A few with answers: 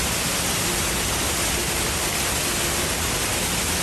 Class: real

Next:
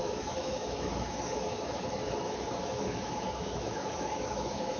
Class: fake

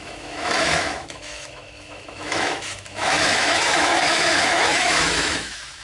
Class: fake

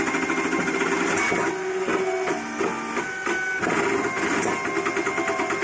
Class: real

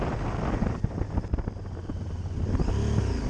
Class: real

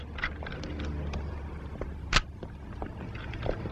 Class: real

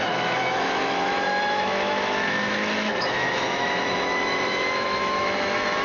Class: fake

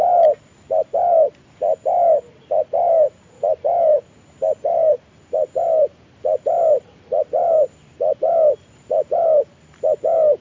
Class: real